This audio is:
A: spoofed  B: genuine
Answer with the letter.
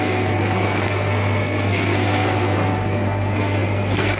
A